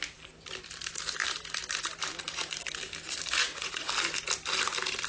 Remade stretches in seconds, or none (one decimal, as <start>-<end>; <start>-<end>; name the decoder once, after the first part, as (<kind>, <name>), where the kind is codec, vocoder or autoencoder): 3.4-3.9 (vocoder, WaveNeXt)